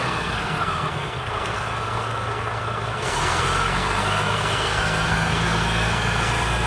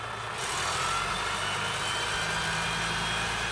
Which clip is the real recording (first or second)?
second